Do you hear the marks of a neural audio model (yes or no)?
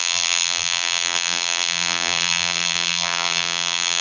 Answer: yes